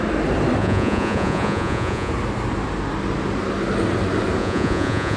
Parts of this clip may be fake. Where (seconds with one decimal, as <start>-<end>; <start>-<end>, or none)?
0.6-2.1; 4.4-5.2